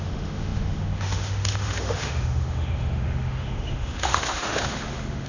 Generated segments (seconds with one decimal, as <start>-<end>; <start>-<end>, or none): 0.0-5.3